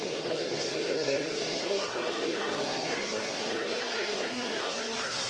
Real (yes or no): no